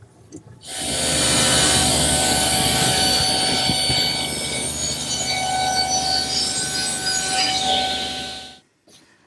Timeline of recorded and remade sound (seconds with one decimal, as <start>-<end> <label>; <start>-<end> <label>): 0.0-1.8 recorded; 1.8-3.2 remade; 3.2-9.3 recorded